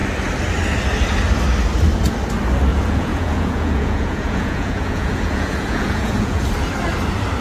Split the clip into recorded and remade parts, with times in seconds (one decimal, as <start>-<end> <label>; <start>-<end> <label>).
0.0-2.7 recorded; 2.7-6.4 remade; 6.4-7.4 recorded